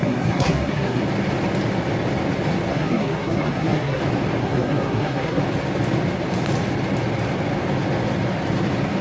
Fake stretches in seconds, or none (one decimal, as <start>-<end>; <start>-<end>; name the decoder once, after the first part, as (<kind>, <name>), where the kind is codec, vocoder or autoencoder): 0.0-1.0 (codec, SNAC); 2.7-4.0; 4.4-5.4